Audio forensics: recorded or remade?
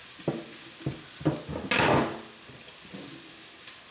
recorded